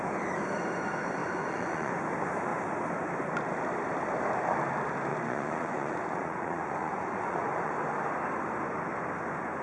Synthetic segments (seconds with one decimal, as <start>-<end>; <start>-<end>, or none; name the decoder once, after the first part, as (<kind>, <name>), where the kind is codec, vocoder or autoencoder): 1.2-1.9 (vocoder, Vocos); 5.1-7.7